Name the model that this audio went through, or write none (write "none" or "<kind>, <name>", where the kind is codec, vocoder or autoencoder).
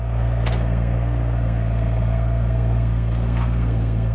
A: codec, SNAC